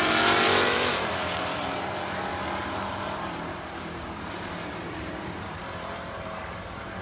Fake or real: fake